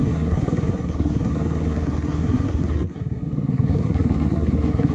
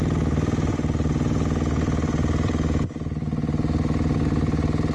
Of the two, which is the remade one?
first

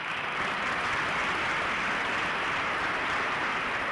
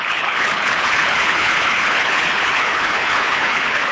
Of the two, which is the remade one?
second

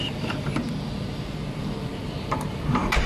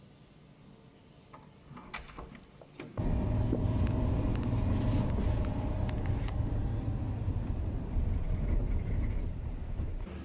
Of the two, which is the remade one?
first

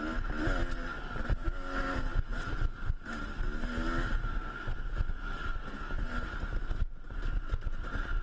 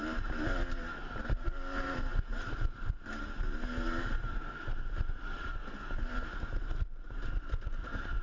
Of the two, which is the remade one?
second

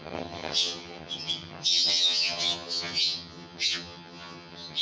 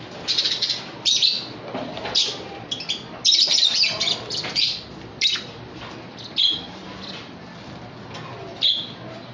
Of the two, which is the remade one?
first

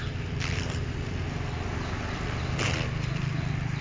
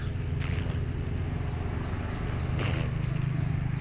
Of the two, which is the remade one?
first